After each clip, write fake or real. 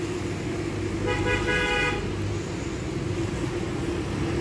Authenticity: real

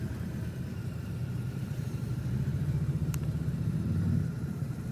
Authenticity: fake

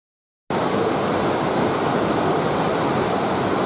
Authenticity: real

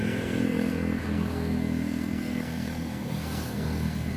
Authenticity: fake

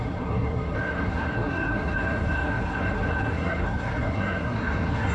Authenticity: fake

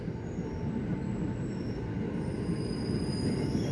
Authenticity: real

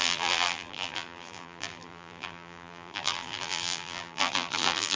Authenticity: fake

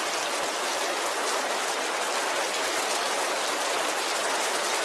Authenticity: real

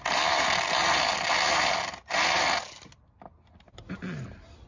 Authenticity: real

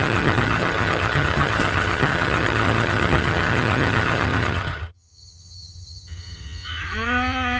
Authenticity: fake